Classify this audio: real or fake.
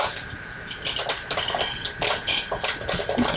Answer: real